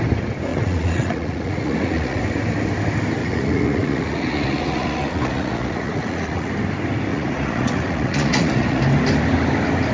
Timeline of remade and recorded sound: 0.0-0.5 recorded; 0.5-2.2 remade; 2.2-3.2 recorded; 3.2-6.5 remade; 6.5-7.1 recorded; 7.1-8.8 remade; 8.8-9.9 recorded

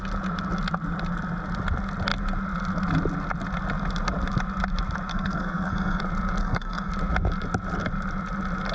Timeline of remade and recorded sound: 0.0-5.1 recorded; 5.1-6.0 remade; 6.0-6.4 recorded; 6.4-6.9 remade; 6.9-8.7 recorded

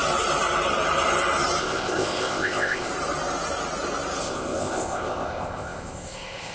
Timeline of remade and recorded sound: 0.0-1.6 recorded; 1.6-2.9 remade; 2.9-4.2 recorded; 4.2-6.5 remade

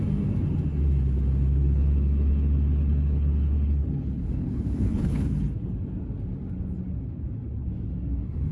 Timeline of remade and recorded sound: 0.0-1.5 recorded; 1.5-5.4 remade; 5.4-8.5 recorded